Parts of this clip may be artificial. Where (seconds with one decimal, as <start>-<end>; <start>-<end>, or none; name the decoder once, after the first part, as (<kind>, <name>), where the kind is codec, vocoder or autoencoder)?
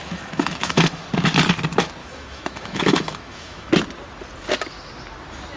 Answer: 0.0-1.0 (autoencoder, DAC-VAE); 2.0-3.7